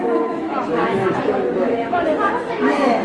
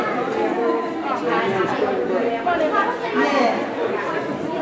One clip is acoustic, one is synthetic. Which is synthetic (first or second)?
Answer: first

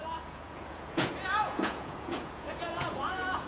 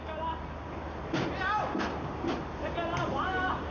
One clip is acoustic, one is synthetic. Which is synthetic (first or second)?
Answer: first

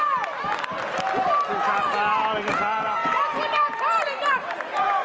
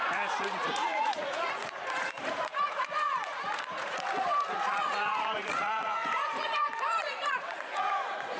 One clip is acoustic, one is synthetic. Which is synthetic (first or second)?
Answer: second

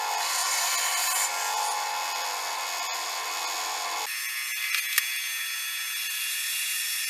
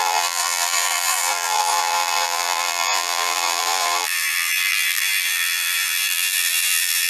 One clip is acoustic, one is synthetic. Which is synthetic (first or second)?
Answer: second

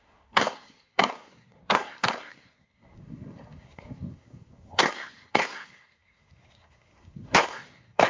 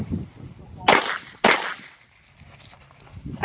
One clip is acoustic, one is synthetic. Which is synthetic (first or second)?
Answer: first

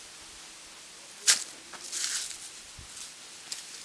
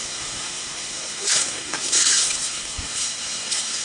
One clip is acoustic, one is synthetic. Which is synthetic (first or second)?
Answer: second